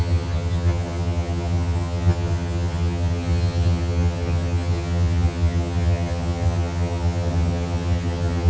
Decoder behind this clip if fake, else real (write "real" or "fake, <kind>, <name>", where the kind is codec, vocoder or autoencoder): fake, vocoder, HiFi-GAN